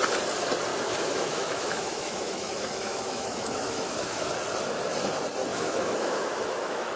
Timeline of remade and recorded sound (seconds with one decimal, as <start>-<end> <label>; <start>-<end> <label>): 0.0-0.7 recorded; 0.7-4.3 remade; 4.3-5.5 recorded; 5.5-7.0 remade